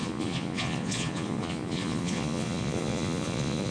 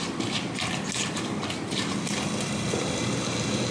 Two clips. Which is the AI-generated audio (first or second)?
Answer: first